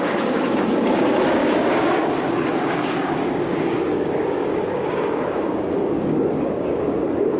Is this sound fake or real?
fake